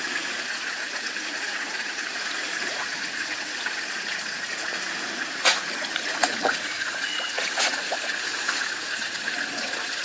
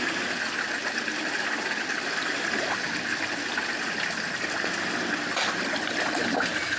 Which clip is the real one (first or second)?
second